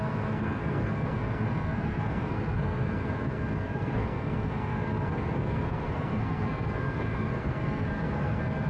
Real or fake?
fake